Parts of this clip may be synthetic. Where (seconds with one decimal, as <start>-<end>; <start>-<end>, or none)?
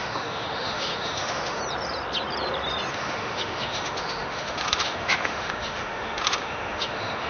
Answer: 0.0-1.6; 2.9-7.3